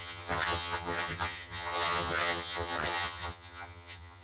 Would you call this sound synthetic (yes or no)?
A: yes